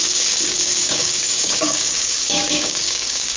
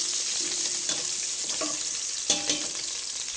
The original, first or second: second